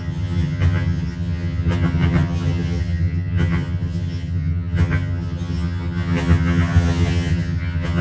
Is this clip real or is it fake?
fake